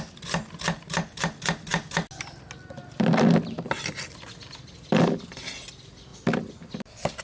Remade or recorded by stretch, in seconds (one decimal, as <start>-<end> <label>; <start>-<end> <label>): 0.0-7.2 recorded